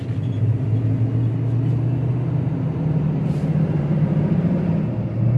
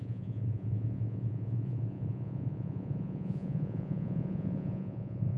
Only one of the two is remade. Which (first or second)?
second